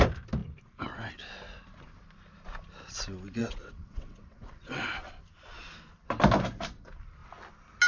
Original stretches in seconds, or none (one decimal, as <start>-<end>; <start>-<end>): 0.0-3.4; 4.9-7.9